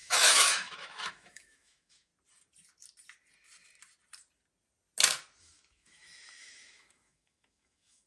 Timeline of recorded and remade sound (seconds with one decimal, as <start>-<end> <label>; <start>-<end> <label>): 0.0-2.1 remade; 2.1-5.4 recorded; 5.4-8.1 remade